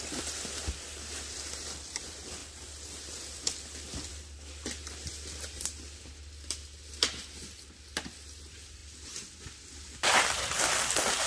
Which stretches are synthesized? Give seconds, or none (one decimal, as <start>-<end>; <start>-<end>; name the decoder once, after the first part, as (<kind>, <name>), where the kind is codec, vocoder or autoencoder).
0.0-2.4 (vocoder, BigVGAN v2); 4.1-11.3